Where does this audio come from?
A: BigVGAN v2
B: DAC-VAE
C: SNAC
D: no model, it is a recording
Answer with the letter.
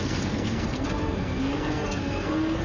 C